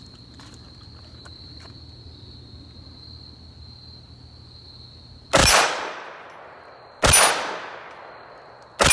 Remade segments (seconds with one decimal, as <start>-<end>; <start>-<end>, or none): none